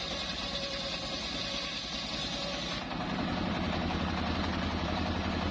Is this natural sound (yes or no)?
yes